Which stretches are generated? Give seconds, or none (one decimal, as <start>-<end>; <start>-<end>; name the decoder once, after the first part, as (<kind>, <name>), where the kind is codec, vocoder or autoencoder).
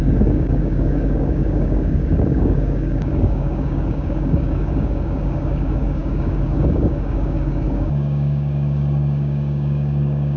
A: 0.0-10.4 (codec, DAC)